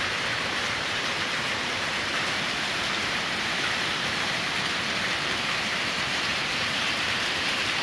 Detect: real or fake fake